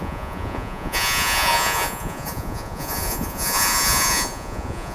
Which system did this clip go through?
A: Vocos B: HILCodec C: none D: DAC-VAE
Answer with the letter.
A